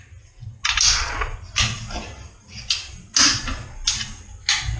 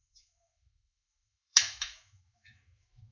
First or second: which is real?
first